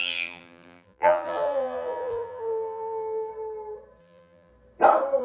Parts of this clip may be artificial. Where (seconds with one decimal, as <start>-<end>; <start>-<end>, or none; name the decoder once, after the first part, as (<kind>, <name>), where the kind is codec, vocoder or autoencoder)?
0.0-3.3 (vocoder, BigVGAN v2); 4.0-4.5